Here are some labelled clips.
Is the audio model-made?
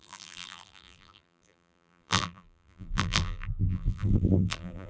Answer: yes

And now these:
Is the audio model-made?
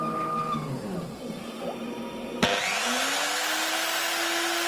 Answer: no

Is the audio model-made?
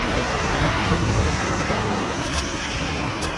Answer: yes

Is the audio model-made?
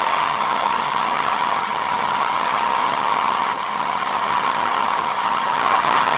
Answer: yes